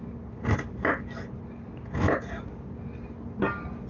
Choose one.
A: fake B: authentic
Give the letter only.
B